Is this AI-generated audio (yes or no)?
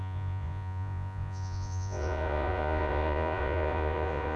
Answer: yes